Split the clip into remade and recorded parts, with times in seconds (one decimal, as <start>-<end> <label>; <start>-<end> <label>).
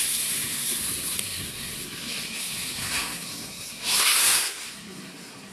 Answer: 0.0-5.5 remade